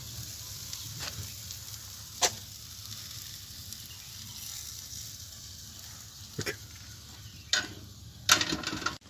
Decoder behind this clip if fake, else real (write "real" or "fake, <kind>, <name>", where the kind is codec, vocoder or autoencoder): real